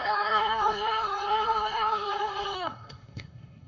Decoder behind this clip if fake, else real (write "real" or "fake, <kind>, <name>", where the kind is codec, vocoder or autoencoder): fake, codec, SNAC